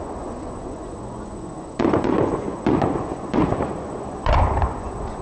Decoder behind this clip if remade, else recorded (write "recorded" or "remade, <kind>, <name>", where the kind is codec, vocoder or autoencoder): remade, vocoder, Vocos